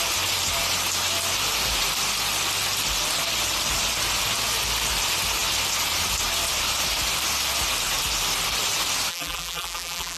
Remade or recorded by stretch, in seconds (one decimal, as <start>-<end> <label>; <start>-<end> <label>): 0.0-9.1 recorded; 9.1-10.2 remade